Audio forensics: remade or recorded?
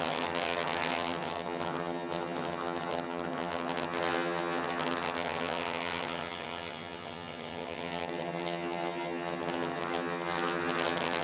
remade